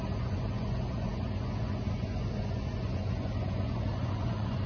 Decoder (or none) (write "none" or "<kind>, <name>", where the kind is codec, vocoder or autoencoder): vocoder, Vocos